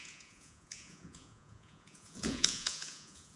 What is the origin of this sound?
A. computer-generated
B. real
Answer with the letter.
A